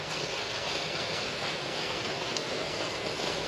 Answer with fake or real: fake